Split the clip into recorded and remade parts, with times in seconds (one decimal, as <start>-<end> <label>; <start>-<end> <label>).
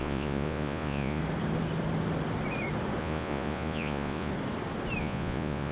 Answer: 0.0-1.2 remade; 1.2-3.0 recorded; 3.0-4.3 remade; 4.3-5.0 recorded; 5.0-5.7 remade